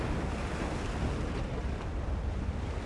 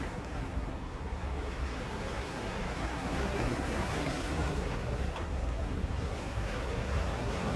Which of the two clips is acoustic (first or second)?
first